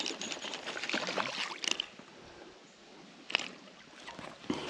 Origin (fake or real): real